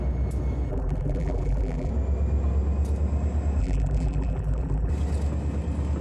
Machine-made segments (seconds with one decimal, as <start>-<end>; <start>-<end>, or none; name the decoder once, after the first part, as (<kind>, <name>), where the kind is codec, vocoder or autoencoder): 0.7-1.9 (vocoder, BigVGAN v2); 3.6-4.9